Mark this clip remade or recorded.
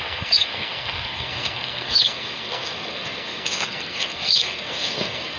remade